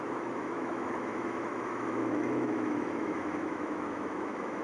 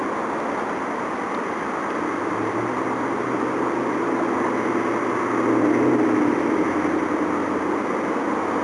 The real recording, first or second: second